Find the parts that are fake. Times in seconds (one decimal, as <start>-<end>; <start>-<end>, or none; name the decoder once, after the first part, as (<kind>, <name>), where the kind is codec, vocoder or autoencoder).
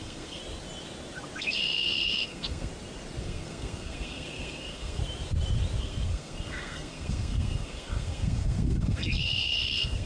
0.0-0.4 (codec, SNAC); 1.4-2.7; 3.2-5.0; 5.8-10.1